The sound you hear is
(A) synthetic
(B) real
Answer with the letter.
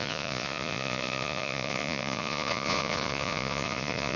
A